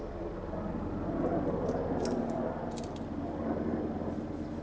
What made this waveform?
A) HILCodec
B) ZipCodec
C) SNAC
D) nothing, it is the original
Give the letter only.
D